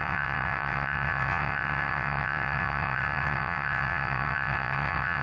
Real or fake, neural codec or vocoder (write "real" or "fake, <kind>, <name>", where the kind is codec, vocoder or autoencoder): fake, vocoder, WaveNeXt